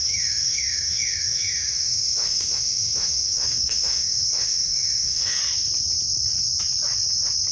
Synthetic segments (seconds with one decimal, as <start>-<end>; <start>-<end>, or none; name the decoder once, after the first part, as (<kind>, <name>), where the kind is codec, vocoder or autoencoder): 0.0-5.4 (autoencoder, DAC-VAE)